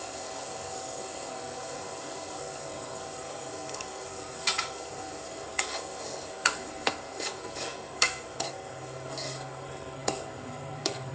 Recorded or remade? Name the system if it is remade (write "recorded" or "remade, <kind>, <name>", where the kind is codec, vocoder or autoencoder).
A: remade, codec, SNAC